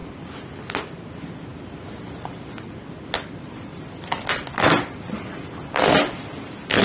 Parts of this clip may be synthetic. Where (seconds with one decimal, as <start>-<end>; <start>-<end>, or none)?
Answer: none